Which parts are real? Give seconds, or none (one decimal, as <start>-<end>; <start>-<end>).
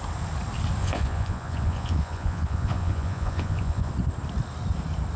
0.0-0.8; 3.9-5.2